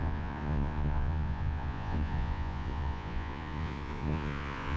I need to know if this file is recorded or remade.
remade